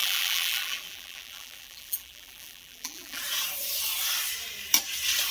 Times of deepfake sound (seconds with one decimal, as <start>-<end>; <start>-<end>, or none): 0.0-3.2